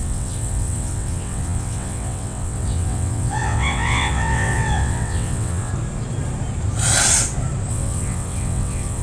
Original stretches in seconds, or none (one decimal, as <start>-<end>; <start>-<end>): 5.7-7.7